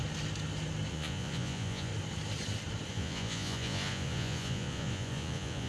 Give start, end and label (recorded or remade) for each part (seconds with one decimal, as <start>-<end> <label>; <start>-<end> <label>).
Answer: 0.0-0.9 recorded; 0.9-1.9 remade; 1.9-2.9 recorded; 2.9-5.7 remade